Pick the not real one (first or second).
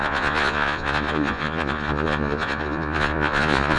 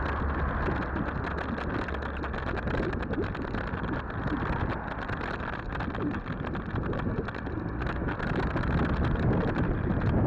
first